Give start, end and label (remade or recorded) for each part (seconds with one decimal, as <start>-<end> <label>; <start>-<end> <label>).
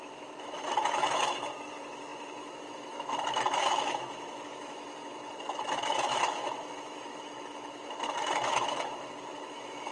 0.0-9.9 remade